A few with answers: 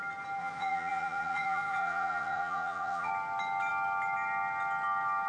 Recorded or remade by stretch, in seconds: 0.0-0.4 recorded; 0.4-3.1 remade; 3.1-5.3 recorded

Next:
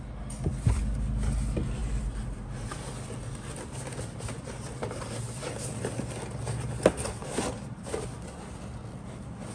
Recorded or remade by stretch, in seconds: 0.0-9.5 recorded

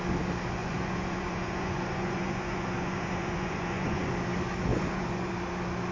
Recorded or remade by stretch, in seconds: 0.0-0.6 recorded; 0.6-4.1 remade; 4.1-4.7 recorded; 4.7-5.3 remade; 5.3-5.9 recorded

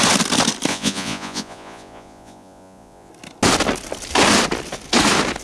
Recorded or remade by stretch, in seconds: 0.0-0.7 recorded; 0.7-3.1 remade; 3.1-5.4 recorded

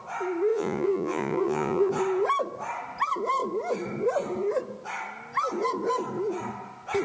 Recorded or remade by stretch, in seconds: 0.0-0.5 recorded; 0.5-1.9 remade; 1.9-7.0 recorded

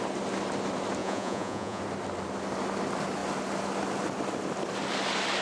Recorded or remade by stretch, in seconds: 0.0-1.0 recorded; 1.0-1.8 remade; 1.8-5.4 recorded

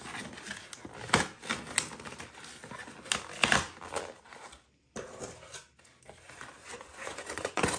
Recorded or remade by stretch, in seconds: 0.0-6.6 recorded; 6.6-7.8 remade

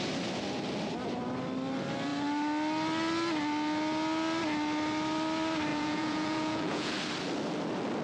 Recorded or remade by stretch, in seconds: 0.0-5.7 recorded; 5.7-6.9 remade; 6.9-8.0 recorded